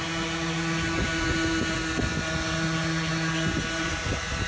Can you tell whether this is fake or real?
real